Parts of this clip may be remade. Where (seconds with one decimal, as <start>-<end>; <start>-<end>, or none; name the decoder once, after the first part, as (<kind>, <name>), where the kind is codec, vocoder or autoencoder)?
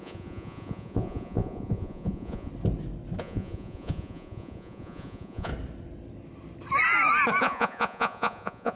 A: 0.0-2.5 (vocoder, Vocos); 3.2-5.5; 7.4-8.8